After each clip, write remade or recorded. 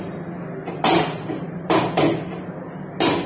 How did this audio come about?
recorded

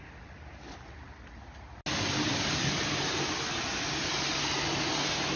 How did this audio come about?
recorded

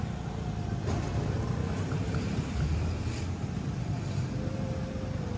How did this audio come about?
recorded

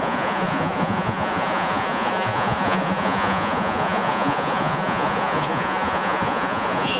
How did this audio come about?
remade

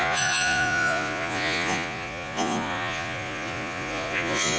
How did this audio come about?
remade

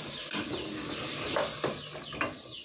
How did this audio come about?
recorded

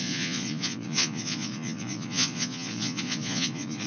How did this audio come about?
remade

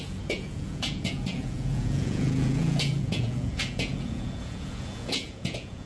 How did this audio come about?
remade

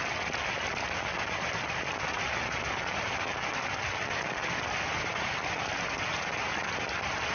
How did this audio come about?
recorded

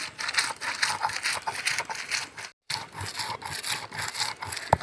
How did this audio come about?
recorded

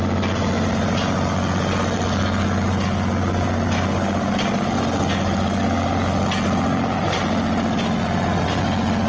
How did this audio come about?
recorded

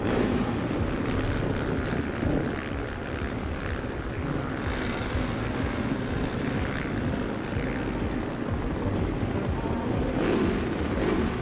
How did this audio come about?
recorded